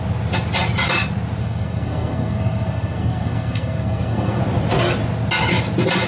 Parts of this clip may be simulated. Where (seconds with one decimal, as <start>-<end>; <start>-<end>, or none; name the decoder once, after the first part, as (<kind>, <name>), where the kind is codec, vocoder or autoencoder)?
1.4-4.4 (codec, SNAC)